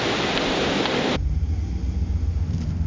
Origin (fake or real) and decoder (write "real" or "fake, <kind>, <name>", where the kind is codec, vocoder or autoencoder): real